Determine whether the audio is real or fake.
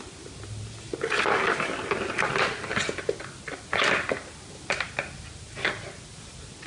real